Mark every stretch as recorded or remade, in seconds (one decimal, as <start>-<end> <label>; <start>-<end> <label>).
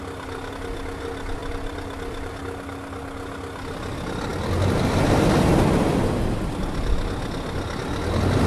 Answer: 0.0-1.4 recorded; 1.4-2.3 remade; 2.3-8.5 recorded